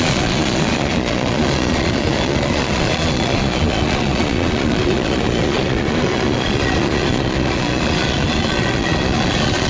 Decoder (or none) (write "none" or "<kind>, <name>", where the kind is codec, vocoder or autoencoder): vocoder, Vocos